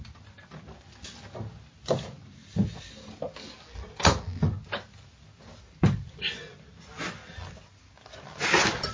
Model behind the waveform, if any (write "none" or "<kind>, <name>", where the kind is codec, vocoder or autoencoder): none